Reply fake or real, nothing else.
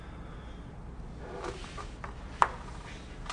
real